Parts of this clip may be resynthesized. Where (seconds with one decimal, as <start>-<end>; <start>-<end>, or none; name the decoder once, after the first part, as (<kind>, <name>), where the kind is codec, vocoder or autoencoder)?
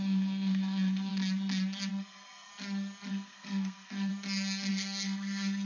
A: 0.0-1.1 (codec, SNAC); 1.9-2.5; 3.1-4.1; 4.7-5.7